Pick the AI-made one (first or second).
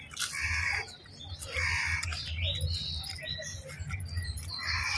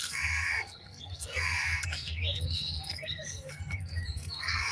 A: second